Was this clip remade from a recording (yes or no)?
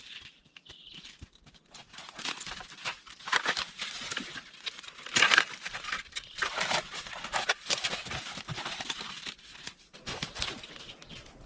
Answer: yes